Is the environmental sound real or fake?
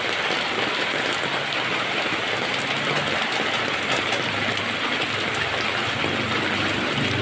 real